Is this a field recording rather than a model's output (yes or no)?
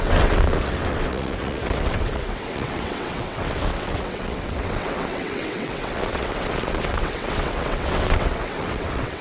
no